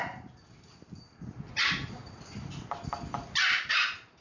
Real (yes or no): yes